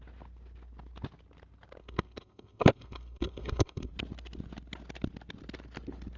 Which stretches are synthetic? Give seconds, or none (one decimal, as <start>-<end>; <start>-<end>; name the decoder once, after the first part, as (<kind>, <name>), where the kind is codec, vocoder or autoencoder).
1.8-3.9 (codec, SNAC)